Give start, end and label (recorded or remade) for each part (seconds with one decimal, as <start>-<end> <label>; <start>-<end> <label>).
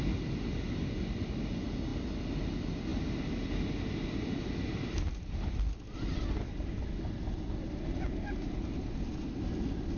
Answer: 0.0-10.0 recorded